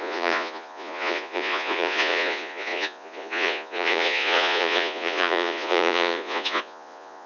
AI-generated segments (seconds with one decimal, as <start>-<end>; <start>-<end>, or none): 0.0-7.3